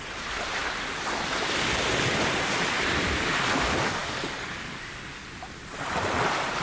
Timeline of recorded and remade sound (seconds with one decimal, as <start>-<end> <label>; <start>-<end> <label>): 0.0-4.0 recorded; 4.0-5.2 remade; 5.2-6.6 recorded